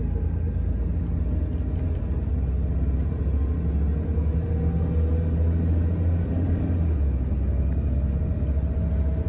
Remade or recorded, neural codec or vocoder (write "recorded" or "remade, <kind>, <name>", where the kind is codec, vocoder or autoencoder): recorded